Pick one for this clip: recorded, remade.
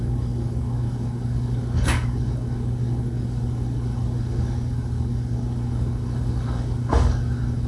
remade